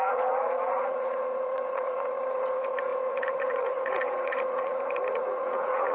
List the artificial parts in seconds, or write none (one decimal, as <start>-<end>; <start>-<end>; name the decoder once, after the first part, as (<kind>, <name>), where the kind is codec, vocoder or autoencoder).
0.0-5.9 (vocoder, Vocos)